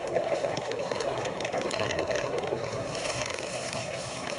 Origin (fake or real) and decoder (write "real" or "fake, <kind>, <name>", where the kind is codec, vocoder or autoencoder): fake, codec, SNAC